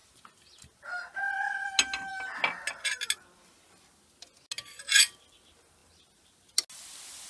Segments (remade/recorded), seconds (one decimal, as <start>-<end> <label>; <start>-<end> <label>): 0.0-7.3 recorded